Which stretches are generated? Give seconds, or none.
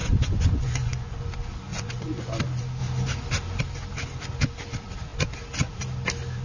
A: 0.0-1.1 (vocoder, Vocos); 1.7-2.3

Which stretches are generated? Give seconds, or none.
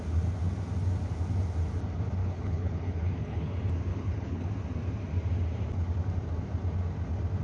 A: 2.2-3.5 (codec, HILCodec); 3.9-4.5